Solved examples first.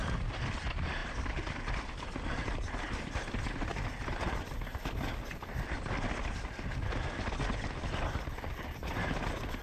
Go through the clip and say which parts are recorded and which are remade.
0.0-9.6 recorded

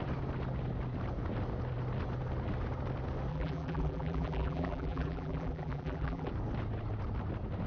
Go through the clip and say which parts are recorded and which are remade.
0.0-3.3 recorded; 3.3-6.3 remade; 6.3-7.7 recorded

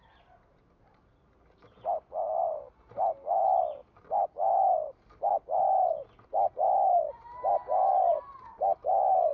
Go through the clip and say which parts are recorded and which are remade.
0.0-9.3 recorded

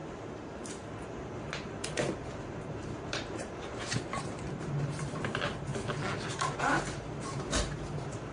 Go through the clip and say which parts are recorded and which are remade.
0.0-5.7 remade; 5.7-6.6 recorded; 6.6-8.3 remade